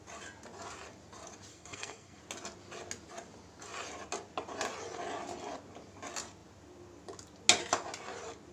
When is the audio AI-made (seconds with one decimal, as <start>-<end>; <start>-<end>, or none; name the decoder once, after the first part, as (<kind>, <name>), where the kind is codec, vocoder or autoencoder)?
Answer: 1.5-2.2 (codec, SNAC)